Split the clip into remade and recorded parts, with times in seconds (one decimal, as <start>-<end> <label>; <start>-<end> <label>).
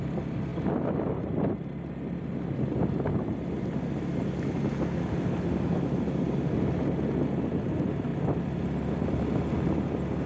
0.0-10.3 recorded